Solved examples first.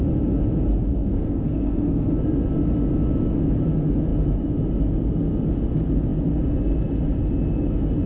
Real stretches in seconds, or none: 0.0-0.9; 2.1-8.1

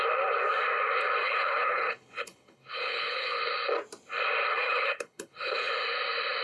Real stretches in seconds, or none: 0.0-1.2; 3.4-4.5; 5.7-6.4

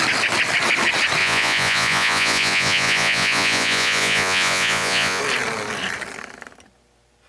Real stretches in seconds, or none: 0.0-1.2; 5.2-7.3